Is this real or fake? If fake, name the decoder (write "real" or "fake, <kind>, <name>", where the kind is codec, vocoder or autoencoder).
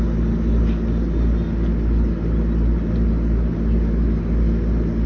real